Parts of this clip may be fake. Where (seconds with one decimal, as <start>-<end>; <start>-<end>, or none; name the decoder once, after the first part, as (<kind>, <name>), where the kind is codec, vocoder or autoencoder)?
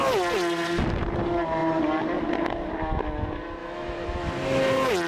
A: 3.6-4.3 (autoencoder, DAC-VAE)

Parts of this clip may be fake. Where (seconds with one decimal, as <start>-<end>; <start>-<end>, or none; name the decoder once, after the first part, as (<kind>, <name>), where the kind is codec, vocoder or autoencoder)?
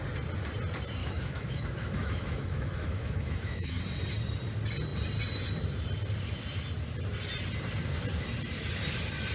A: 1.0-3.8 (autoencoder, DAC-VAE)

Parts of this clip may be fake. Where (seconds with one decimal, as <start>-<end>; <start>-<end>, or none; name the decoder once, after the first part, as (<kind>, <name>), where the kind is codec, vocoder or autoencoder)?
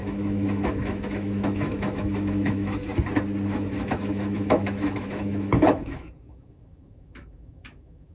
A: 0.0-2.9 (autoencoder, DAC-VAE); 3.5-8.1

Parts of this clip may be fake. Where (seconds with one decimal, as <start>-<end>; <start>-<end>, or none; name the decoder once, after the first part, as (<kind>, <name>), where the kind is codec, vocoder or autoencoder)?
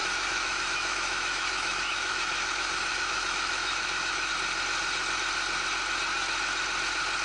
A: 0.0-4.3 (autoencoder, DAC-VAE)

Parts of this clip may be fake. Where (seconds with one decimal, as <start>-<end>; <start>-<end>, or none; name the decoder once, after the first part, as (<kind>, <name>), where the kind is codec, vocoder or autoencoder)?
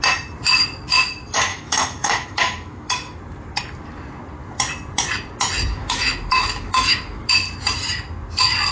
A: 1.5-3.2 (autoencoder, DAC-VAE); 5.7-7.3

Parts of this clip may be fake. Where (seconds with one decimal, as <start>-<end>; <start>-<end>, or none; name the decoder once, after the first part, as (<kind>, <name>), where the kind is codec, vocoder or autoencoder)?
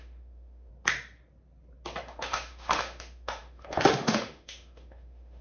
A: 0.0-0.7 (autoencoder, DAC-VAE); 2.0-5.4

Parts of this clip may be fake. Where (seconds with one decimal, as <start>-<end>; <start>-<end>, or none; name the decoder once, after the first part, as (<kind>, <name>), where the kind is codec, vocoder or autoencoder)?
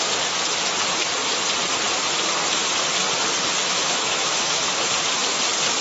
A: 3.6-4.7 (autoencoder, DAC-VAE)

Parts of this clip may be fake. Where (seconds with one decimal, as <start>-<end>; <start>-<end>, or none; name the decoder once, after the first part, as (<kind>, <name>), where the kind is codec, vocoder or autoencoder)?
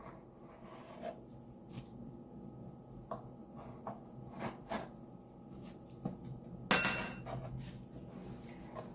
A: none